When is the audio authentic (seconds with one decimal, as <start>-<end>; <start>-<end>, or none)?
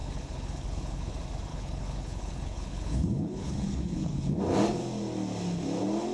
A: 1.1-1.5; 4.4-6.1